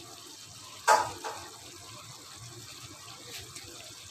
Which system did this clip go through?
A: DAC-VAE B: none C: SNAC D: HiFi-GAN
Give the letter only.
B